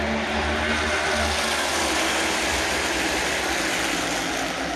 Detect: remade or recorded recorded